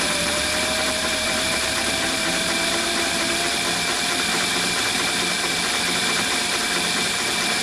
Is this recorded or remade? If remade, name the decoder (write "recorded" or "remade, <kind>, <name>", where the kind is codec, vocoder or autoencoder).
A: remade, vocoder, BigVGAN v2